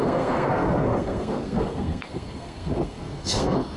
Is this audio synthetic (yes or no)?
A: yes